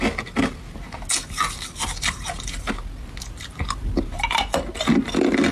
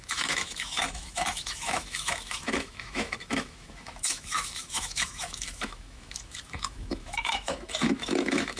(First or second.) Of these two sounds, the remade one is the second